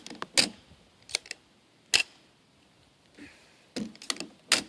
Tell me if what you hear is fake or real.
real